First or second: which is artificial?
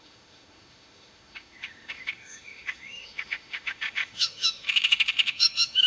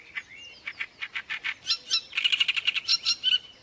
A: first